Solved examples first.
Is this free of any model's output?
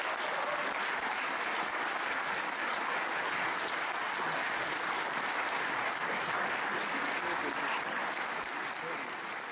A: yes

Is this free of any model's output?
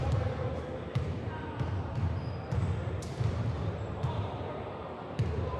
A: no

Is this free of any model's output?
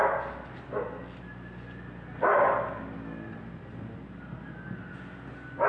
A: yes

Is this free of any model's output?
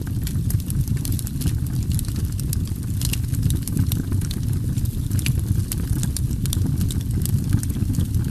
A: no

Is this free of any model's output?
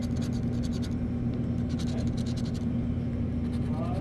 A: yes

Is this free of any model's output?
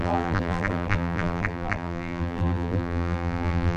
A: no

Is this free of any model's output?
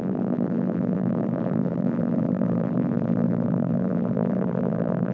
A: no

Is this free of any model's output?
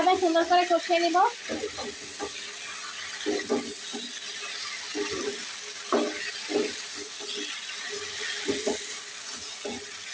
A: yes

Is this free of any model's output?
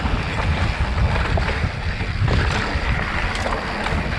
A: yes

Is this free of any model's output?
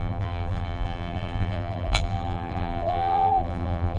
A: no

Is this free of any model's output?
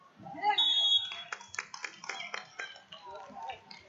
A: no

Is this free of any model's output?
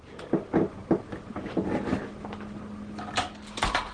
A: yes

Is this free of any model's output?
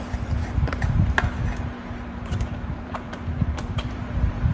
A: no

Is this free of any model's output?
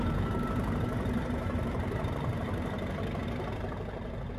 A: no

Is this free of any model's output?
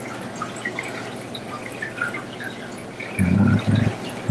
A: yes